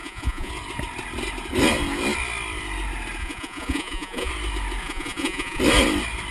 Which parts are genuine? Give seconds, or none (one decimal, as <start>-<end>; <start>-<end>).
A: 0.5-3.2; 4.3-4.8; 5.6-6.3